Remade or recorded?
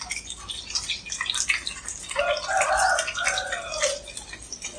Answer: recorded